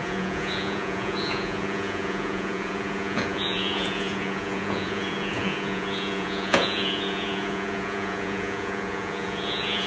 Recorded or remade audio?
remade